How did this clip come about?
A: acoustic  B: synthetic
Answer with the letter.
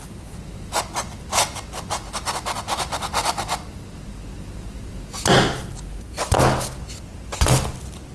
A